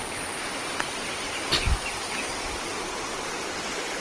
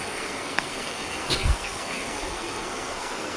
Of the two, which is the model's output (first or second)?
second